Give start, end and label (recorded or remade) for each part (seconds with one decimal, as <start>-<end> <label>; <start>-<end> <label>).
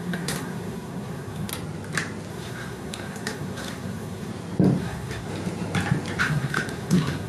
0.0-1.5 remade; 1.5-2.3 recorded; 2.3-4.3 remade; 4.3-4.8 recorded; 4.8-5.3 remade; 5.3-6.2 recorded; 6.2-7.3 remade